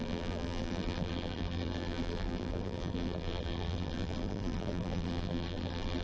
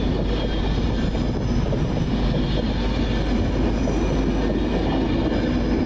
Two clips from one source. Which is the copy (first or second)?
first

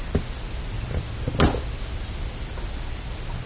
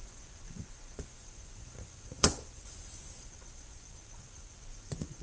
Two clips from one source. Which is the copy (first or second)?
second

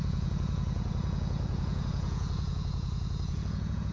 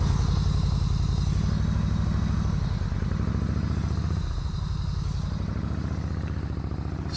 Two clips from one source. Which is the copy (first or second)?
first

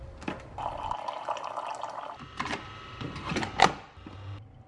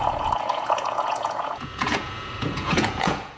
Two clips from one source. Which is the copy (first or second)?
second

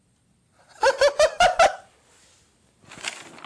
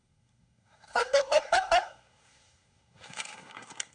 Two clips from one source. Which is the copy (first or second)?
second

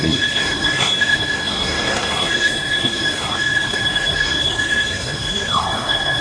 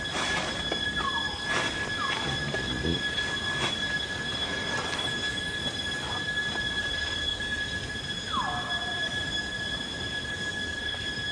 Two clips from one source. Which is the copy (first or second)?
first